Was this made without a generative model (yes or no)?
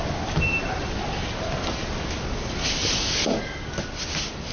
yes